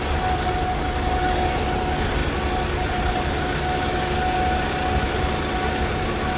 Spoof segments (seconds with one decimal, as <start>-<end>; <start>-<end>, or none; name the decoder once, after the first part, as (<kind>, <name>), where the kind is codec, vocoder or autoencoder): none